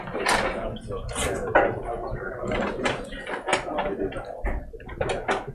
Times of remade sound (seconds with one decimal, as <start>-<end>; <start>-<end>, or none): none